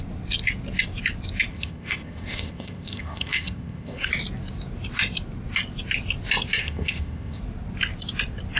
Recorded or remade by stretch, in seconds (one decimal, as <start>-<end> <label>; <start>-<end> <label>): 0.0-1.5 recorded; 1.5-4.1 remade; 4.1-6.6 recorded; 6.6-7.4 remade; 7.4-8.6 recorded